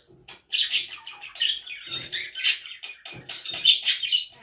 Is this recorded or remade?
recorded